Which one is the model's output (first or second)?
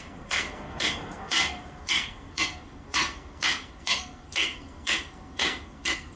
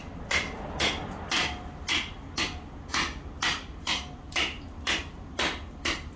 first